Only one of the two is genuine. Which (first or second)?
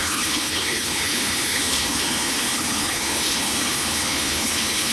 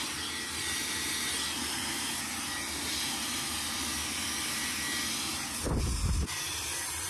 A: second